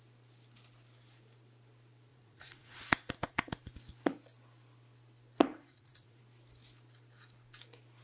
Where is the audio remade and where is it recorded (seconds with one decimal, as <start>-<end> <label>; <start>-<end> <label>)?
0.0-2.1 recorded; 2.1-3.7 remade; 3.7-5.5 recorded; 5.5-6.2 remade; 6.2-8.0 recorded